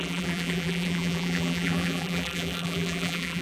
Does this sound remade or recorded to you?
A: remade